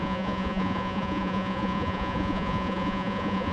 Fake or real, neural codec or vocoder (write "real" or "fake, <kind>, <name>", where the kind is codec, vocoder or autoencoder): fake, vocoder, Vocos